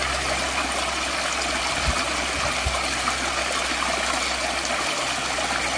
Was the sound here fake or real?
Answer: real